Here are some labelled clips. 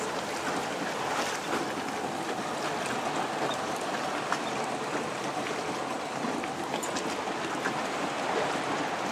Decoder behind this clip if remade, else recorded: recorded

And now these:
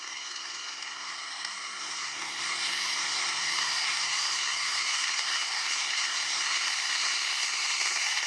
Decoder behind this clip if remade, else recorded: remade, codec, SNAC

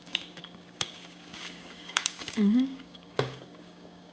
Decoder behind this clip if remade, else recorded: remade, codec, DAC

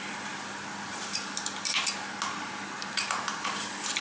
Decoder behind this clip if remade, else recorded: recorded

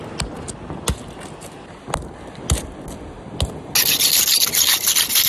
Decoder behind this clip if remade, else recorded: recorded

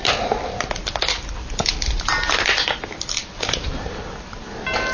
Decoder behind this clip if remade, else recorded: recorded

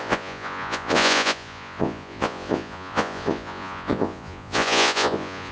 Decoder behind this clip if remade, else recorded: remade, vocoder, Vocos